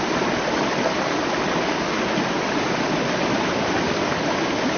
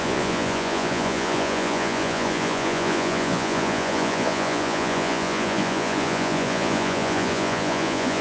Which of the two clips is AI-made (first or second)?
second